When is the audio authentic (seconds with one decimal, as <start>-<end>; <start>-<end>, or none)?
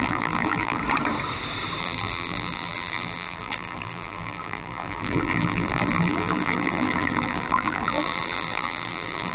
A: 0.8-1.8